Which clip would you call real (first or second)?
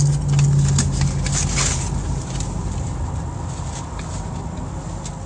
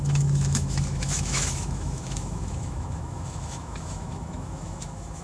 first